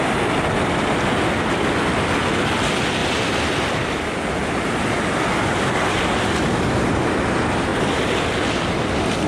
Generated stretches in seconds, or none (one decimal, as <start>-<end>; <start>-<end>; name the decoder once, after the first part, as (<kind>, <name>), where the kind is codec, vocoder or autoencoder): 3.0-4.0 (vocoder, BigVGAN v2)